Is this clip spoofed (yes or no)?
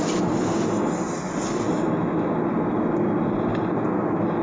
no